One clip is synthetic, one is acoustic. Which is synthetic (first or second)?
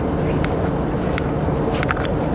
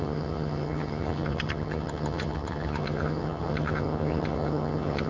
second